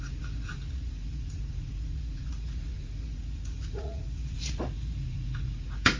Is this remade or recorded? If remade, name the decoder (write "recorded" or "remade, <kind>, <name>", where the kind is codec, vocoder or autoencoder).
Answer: remade, vocoder, Vocos